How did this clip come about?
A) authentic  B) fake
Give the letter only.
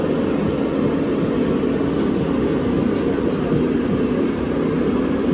A